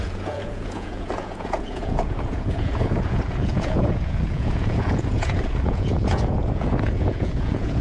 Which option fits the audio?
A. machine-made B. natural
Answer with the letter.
A